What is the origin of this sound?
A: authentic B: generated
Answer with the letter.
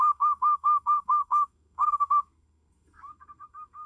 B